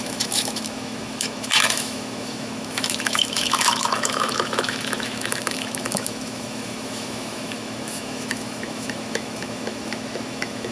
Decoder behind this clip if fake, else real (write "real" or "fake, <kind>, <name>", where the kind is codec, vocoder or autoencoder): fake, autoencoder, DAC-VAE